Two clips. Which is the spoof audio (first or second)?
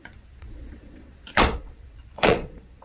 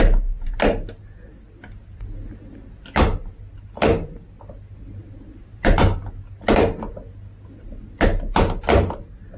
first